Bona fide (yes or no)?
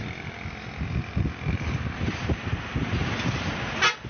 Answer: yes